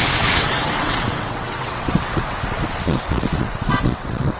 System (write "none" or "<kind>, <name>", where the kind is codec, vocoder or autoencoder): vocoder, WaveNeXt